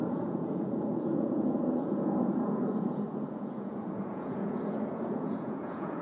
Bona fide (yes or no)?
no